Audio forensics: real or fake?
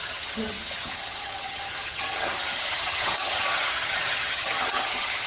fake